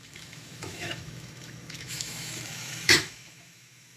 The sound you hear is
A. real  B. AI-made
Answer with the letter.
B